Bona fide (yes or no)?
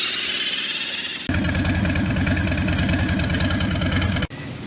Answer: yes